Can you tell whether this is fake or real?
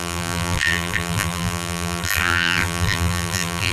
fake